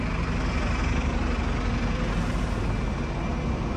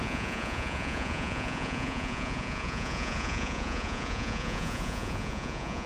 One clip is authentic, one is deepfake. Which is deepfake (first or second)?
second